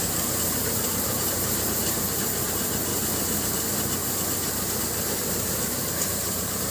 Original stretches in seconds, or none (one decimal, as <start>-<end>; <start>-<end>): 0.6-2.2; 2.9-3.6; 4.0-4.8